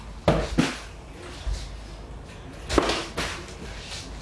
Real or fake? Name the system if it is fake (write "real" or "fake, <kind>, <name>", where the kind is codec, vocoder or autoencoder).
real